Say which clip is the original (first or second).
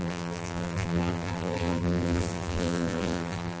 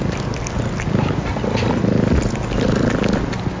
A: second